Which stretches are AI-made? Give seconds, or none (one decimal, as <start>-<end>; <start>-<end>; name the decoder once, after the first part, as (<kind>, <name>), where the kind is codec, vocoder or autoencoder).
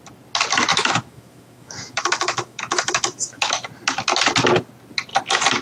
0.7-3.7 (autoencoder, DAC-VAE)